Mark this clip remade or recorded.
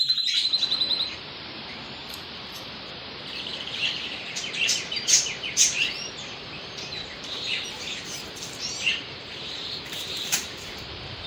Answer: remade